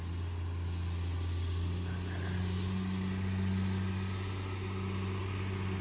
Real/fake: real